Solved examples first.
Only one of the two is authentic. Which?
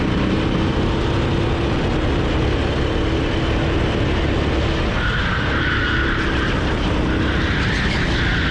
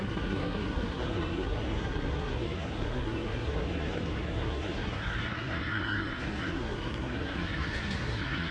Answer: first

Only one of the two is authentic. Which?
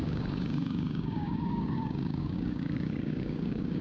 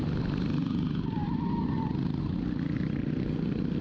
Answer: second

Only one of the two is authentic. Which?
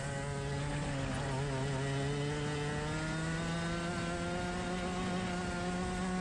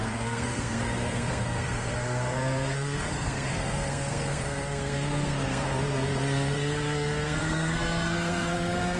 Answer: first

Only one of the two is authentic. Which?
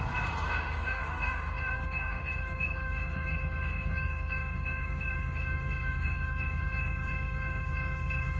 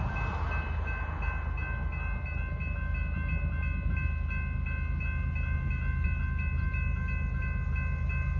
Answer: second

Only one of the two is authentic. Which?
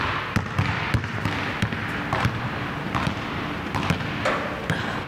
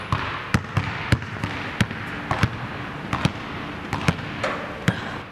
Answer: second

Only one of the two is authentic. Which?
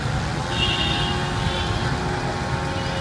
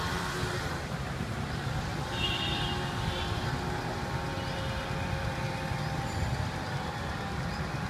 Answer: first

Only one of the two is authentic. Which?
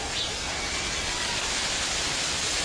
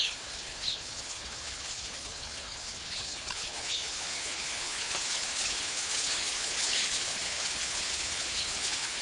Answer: first